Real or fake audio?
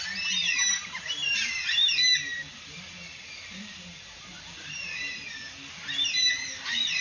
real